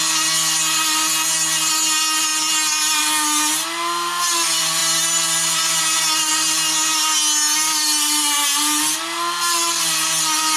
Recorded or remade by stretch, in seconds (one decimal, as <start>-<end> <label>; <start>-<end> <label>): 0.0-10.6 recorded